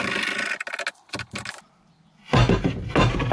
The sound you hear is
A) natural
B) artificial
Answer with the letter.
A